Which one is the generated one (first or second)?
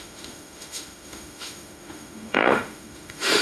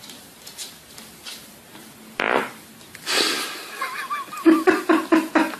first